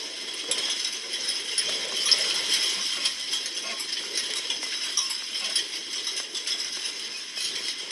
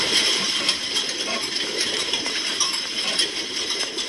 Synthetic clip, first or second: second